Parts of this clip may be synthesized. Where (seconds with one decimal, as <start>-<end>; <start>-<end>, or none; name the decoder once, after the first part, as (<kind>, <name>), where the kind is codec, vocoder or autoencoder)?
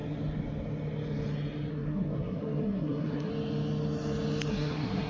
1.7-3.3 (codec, SNAC); 4.5-5.1